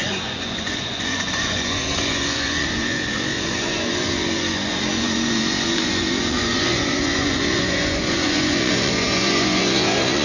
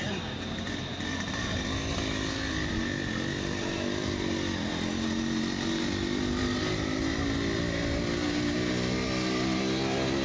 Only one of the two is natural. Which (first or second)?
second